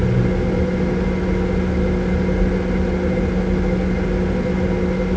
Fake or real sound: real